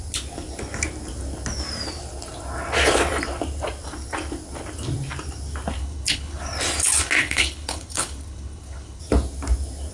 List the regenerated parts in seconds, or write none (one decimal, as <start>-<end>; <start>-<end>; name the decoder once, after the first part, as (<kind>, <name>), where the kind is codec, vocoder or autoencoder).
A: 5.8-6.4 (codec, HILCodec); 7.2-9.0